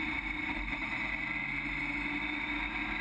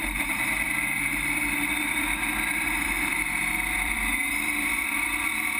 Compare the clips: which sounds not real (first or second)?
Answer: second